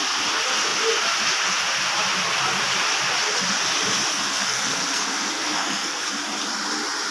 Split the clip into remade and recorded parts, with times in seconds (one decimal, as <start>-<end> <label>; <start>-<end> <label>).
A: 0.0-4.1 recorded; 4.1-6.1 remade; 6.1-7.1 recorded